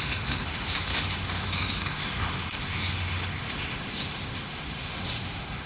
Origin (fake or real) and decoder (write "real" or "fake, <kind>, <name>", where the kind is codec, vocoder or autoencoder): fake, autoencoder, DAC-VAE